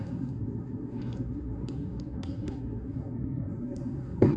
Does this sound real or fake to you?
fake